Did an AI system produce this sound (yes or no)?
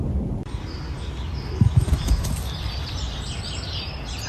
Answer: no